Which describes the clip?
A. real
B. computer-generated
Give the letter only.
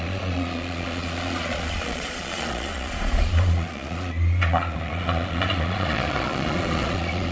B